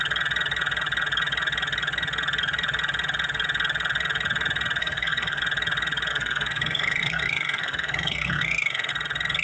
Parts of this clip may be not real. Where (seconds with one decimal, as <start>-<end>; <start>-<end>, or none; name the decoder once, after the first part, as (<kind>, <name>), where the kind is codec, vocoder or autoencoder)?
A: 4.8-5.4 (codec, SNAC); 6.1-8.9